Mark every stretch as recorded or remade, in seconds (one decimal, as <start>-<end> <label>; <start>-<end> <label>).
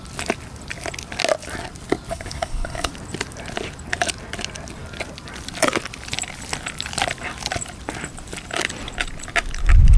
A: 0.0-2.1 recorded; 2.1-2.9 remade; 2.9-10.0 recorded